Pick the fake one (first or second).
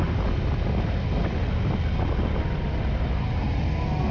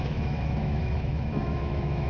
second